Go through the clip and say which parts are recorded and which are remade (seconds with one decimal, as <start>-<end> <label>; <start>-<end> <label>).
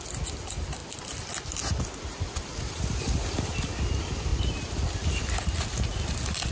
0.0-6.5 recorded